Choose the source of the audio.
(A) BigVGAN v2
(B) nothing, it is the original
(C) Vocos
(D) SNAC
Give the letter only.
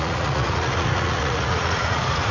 C